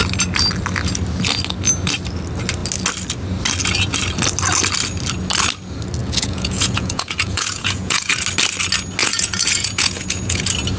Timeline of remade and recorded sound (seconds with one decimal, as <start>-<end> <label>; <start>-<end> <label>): 0.0-6.0 recorded; 6.0-8.1 remade; 8.1-9.0 recorded; 9.0-10.4 remade; 10.4-10.8 recorded